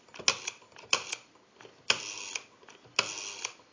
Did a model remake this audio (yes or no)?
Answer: no